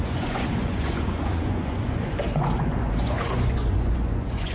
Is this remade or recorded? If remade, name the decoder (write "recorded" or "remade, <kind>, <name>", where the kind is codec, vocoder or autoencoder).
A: remade, vocoder, Vocos